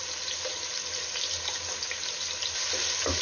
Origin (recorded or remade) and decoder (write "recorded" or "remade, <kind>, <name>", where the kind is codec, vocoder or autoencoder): recorded